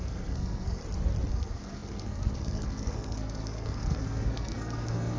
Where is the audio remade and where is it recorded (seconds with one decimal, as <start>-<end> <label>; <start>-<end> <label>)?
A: 0.0-0.8 remade; 0.8-1.3 recorded; 1.3-5.2 remade